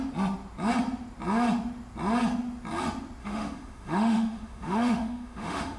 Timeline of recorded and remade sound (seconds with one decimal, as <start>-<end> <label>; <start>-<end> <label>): 0.0-3.2 recorded; 3.2-5.8 remade